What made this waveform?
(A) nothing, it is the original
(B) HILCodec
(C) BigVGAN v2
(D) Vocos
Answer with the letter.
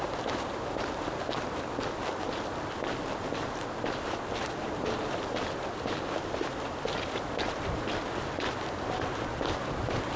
C